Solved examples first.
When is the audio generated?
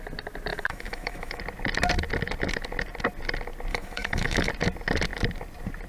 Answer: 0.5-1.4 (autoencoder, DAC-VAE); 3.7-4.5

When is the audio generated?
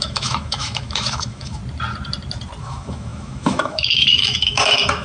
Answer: 0.0-1.6 (autoencoder, DAC-VAE); 2.6-5.0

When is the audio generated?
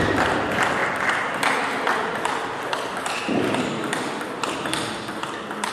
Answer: none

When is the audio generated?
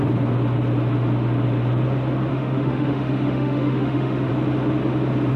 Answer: 2.3-4.3 (autoencoder, DAC-VAE)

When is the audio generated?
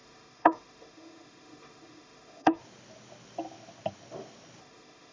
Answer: 0.0-2.6 (autoencoder, DAC-VAE); 4.6-5.1